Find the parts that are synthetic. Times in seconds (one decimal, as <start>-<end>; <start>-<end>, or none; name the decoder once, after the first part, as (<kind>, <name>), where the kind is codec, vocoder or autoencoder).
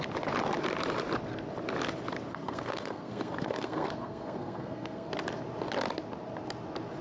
2.3-5.1 (codec, SNAC)